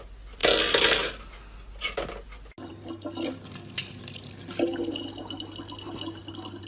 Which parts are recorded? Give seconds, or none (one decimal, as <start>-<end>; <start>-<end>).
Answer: 0.0-6.7